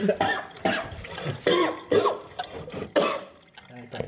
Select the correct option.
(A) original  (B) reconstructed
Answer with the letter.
A